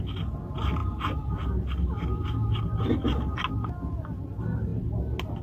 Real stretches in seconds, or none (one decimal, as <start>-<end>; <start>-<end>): 0.0-5.4